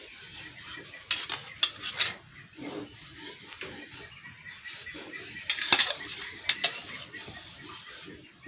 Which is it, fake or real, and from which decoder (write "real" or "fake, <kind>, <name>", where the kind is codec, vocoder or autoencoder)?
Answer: real